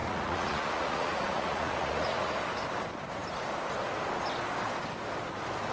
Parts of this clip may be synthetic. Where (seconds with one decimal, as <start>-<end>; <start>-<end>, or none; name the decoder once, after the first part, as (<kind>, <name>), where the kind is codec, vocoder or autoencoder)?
0.0-2.3 (vocoder, Vocos)